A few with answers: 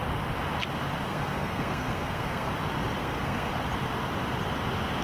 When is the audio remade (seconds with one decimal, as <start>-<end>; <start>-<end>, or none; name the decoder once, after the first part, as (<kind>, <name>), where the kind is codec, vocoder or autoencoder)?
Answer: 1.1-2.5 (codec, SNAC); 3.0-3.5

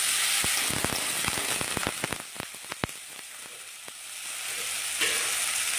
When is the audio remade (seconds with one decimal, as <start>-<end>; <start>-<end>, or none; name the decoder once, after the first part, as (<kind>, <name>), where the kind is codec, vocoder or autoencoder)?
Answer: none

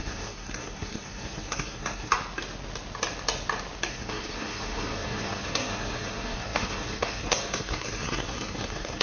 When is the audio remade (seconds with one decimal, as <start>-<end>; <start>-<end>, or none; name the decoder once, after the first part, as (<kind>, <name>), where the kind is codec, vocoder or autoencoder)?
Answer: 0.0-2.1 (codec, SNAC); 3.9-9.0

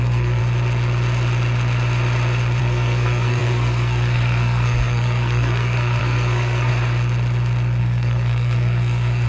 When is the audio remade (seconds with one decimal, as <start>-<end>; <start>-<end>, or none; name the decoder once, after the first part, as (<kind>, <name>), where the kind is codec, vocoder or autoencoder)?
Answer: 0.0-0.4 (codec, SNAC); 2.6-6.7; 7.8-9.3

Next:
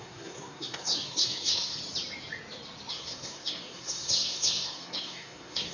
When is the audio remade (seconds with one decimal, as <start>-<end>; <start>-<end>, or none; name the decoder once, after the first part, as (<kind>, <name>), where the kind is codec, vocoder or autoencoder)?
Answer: 0.0-1.8 (codec, SNAC); 2.9-5.7